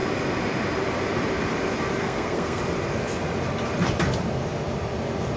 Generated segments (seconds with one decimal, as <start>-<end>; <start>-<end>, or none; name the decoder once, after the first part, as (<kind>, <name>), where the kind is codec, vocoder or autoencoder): 2.0-2.6 (codec, SNAC)